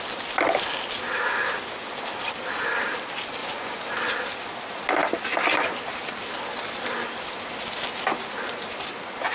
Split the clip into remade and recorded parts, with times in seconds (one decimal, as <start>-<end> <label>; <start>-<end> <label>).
0.0-3.4 recorded; 3.4-4.0 remade; 4.0-9.3 recorded